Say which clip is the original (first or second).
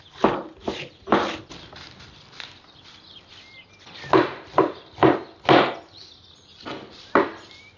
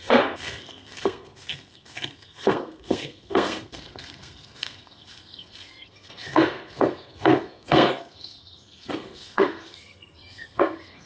first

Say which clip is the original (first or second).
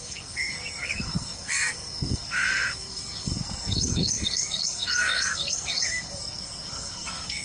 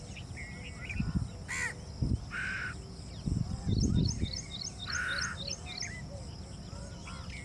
second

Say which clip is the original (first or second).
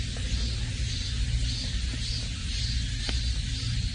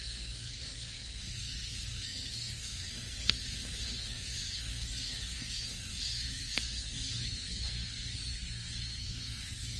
first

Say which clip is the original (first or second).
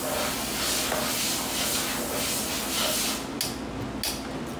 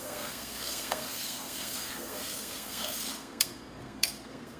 first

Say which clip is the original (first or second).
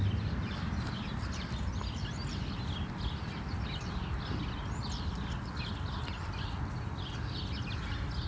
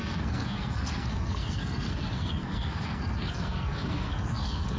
first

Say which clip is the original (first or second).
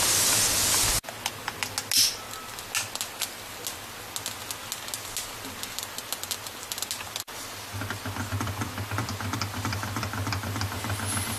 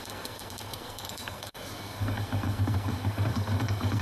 first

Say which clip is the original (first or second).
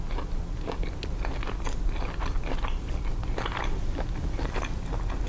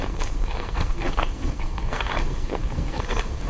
first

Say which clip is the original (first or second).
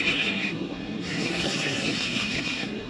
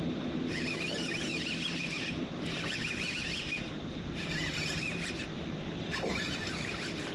second